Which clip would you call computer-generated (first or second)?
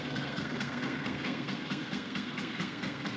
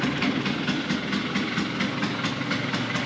first